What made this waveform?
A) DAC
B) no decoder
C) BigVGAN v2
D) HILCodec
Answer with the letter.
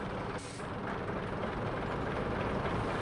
B